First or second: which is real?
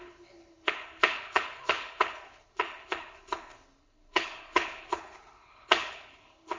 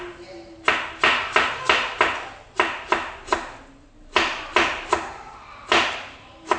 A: second